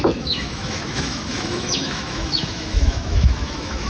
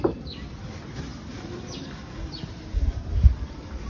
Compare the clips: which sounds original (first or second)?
second